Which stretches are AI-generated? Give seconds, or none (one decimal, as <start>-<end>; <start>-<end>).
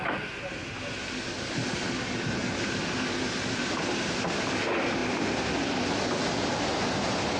none